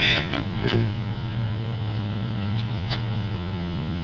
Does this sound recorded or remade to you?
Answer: remade